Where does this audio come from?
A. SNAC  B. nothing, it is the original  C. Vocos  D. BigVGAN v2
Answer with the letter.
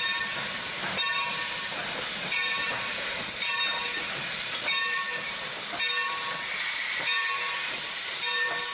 D